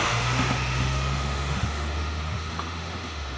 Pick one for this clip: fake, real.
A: fake